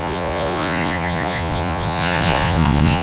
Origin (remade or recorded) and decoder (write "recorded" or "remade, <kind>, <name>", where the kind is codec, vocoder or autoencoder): remade, vocoder, Vocos